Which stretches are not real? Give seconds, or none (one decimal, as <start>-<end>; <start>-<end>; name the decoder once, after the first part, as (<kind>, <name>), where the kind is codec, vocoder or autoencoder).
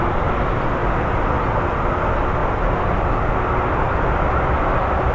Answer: none